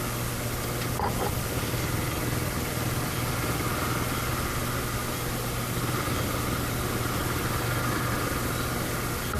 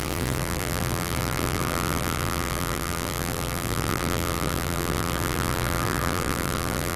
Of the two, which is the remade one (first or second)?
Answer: second